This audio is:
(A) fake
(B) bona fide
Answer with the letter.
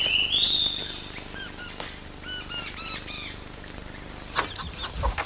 B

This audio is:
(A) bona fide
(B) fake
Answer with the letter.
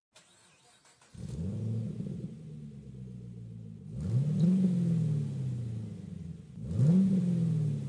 A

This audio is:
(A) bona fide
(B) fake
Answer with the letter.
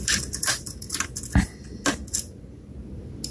A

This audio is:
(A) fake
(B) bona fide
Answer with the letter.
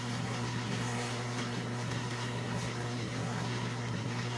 A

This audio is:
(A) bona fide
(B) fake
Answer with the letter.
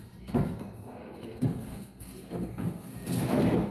B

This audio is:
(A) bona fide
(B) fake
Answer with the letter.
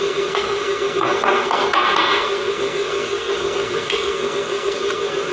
B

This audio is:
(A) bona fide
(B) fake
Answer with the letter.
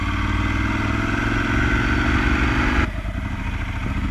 A